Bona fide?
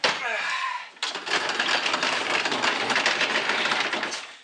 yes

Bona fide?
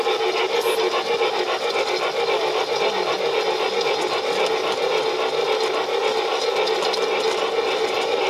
yes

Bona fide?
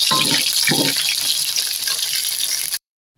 no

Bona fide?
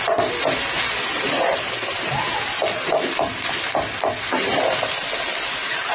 yes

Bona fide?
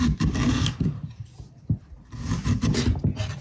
yes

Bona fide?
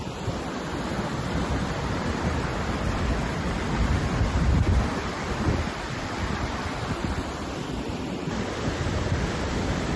no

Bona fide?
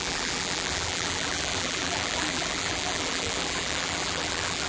no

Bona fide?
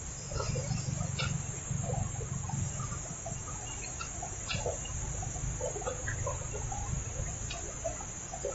yes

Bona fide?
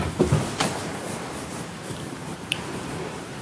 no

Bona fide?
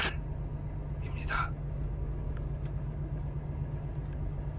yes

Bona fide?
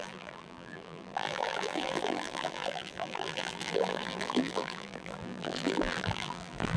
no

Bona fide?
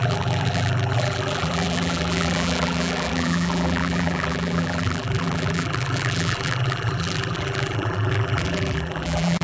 no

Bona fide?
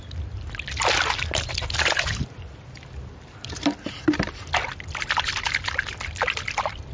no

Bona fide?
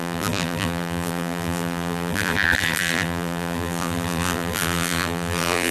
no